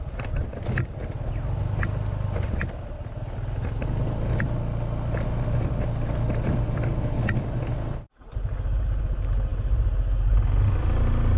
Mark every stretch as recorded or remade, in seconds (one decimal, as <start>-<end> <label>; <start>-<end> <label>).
0.0-11.4 recorded